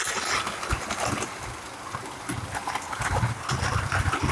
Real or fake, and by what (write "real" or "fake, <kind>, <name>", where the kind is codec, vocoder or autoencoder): real